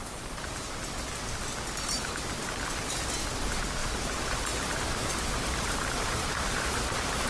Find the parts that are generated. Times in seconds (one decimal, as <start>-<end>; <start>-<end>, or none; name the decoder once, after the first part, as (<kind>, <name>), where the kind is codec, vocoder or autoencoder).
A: 3.8-7.3 (vocoder, BigVGAN v2)